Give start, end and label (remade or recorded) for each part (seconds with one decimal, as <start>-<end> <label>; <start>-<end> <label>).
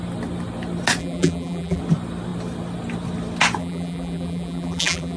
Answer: 0.0-1.0 recorded; 1.0-1.8 remade; 1.8-3.6 recorded; 3.6-5.2 remade